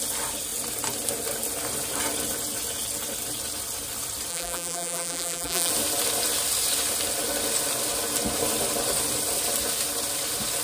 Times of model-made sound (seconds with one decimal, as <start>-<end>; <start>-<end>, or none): 4.3-5.7